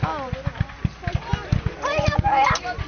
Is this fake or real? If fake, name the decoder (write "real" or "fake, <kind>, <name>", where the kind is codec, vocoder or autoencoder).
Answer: real